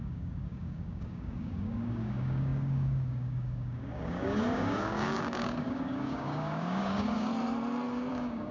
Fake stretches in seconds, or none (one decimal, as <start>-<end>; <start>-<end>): 0.0-7.3; 8.1-8.5